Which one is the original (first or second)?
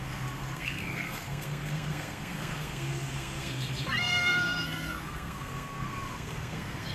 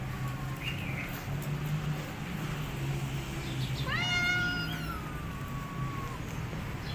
second